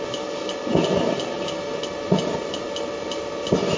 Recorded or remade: recorded